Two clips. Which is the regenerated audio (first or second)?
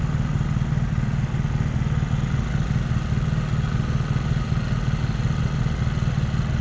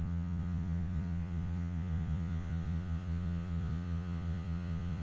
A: second